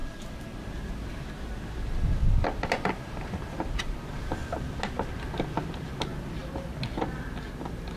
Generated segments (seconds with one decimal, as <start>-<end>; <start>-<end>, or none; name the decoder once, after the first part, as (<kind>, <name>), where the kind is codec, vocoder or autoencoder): none